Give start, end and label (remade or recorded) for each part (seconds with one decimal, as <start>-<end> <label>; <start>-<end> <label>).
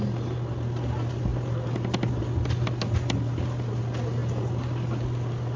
0.0-5.6 recorded